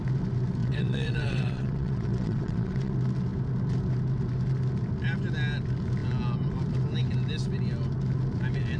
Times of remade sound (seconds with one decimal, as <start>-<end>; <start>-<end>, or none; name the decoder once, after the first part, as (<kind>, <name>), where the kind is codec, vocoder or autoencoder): 0.6-2.9 (vocoder, WaveNeXt)